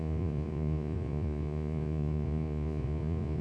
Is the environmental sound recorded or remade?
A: remade